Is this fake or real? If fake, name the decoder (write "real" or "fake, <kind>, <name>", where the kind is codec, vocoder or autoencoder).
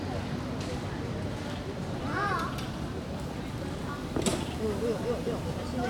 real